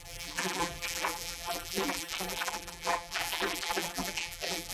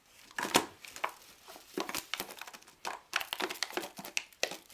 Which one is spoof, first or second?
first